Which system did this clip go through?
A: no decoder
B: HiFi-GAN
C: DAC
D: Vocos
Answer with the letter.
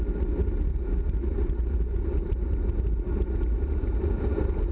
A